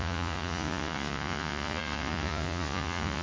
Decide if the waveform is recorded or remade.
remade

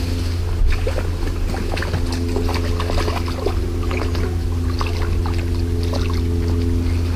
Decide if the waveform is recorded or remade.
recorded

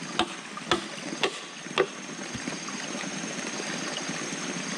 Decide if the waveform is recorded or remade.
recorded